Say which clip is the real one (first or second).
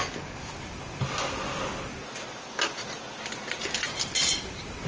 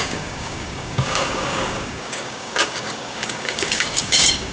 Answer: first